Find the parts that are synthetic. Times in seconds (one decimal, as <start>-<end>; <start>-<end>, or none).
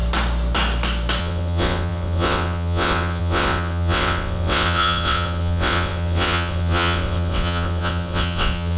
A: 1.2-8.8